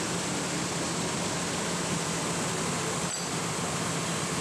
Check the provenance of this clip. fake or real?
real